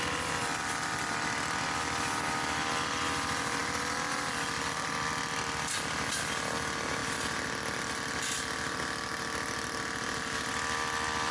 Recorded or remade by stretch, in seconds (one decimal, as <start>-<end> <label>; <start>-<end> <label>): 0.0-11.3 recorded